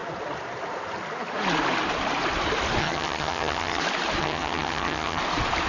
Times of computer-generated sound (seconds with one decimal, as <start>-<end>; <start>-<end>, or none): 2.8-3.8; 4.2-5.2